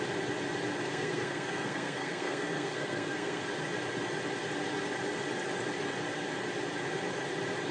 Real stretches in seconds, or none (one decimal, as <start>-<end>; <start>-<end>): 0.0-0.9; 3.4-7.7